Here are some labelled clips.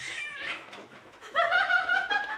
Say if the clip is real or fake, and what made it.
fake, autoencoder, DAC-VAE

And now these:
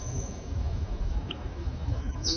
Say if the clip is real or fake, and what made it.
fake, autoencoder, DAC-VAE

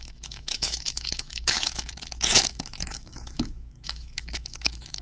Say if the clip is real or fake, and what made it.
fake, autoencoder, DAC-VAE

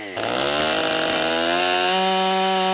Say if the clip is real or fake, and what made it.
real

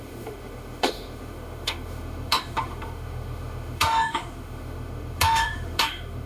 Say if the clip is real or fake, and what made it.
fake, autoencoder, DAC-VAE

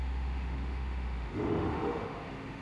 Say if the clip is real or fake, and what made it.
fake, autoencoder, DAC-VAE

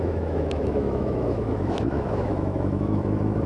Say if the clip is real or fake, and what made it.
fake, autoencoder, DAC-VAE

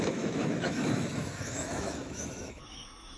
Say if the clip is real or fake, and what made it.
fake, autoencoder, DAC-VAE